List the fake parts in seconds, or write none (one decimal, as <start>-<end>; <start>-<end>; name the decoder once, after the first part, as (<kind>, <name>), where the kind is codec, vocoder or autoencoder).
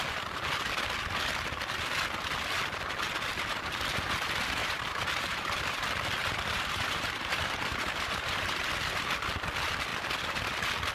4.6-5.8 (vocoder, BigVGAN v2); 6.2-8.7